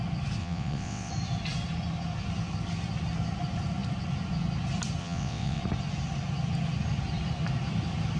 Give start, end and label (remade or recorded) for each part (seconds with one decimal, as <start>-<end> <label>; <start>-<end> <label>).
0.0-0.4 recorded; 0.4-1.1 remade; 1.1-5.0 recorded; 5.0-5.6 remade; 5.6-8.2 recorded

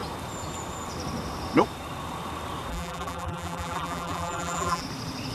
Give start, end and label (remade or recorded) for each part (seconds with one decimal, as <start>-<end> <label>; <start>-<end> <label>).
0.0-2.7 recorded; 2.7-4.8 remade; 4.8-5.3 recorded

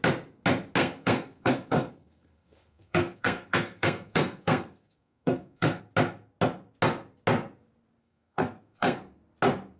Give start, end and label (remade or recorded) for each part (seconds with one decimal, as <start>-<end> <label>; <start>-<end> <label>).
0.0-0.8 recorded; 0.8-5.8 remade; 5.8-8.0 recorded; 8.0-9.0 remade; 9.0-9.8 recorded

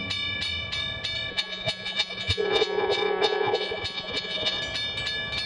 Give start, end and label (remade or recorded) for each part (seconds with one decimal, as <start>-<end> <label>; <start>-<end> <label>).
0.0-1.3 recorded; 1.3-4.6 remade; 4.6-5.5 recorded

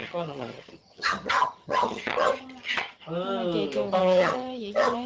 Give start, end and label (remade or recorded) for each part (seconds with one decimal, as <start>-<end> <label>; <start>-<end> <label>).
0.0-3.1 remade; 3.1-4.0 recorded; 4.0-5.1 remade

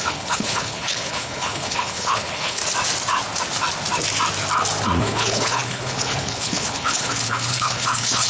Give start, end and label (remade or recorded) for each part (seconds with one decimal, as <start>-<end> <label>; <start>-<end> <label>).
0.0-2.6 remade; 2.6-5.0 recorded; 5.0-8.3 remade